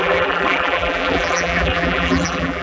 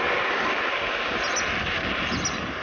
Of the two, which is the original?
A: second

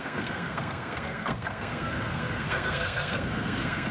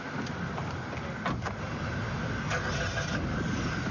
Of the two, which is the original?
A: second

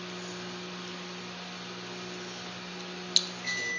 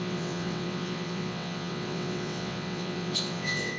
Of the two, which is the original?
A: first